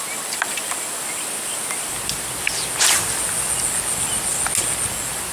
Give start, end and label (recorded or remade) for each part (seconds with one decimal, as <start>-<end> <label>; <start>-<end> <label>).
0.0-5.3 recorded